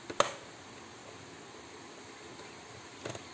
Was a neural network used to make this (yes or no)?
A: no